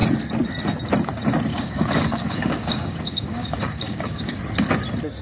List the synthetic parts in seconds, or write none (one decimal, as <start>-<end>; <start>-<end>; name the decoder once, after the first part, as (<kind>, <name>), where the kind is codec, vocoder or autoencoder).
1.5-4.4 (codec, DAC)

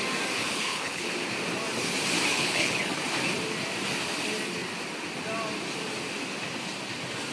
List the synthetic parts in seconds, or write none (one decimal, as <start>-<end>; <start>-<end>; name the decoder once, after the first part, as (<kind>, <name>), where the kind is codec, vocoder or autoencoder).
0.4-1.1 (codec, HILCodec); 2.3-2.9

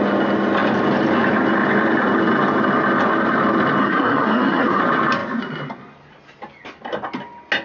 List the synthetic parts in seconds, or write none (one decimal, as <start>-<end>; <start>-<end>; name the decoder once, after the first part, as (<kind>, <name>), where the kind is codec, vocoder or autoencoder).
3.8-4.8 (codec, SNAC)

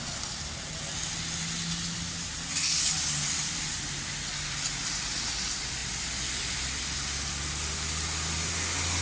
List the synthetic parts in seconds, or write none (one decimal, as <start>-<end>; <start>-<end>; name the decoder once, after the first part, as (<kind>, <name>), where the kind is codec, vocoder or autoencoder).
none

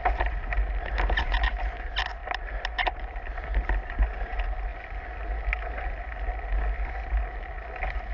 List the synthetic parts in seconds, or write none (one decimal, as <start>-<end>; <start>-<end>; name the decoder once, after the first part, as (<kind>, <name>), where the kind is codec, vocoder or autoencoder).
none

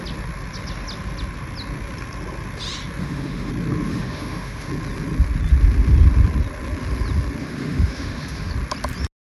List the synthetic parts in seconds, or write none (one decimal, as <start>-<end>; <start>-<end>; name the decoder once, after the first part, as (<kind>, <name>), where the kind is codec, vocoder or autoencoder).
3.0-3.5 (autoencoder, DAC-VAE); 3.9-4.7; 7.4-8.5